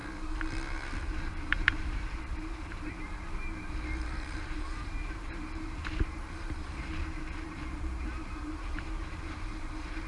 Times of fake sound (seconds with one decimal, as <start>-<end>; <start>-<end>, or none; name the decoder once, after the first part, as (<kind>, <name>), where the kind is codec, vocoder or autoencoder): 1.1-10.1 (vocoder, BigVGAN v2)